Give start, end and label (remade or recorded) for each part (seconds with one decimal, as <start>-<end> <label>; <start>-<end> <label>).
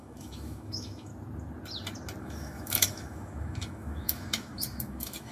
0.0-1.1 remade; 1.1-2.2 recorded; 2.2-5.3 remade